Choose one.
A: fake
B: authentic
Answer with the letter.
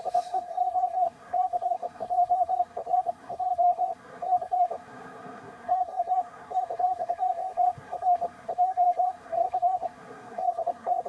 A